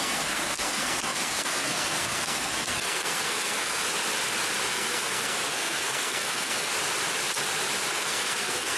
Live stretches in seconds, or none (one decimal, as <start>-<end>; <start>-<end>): 3.8-4.7; 6.7-7.9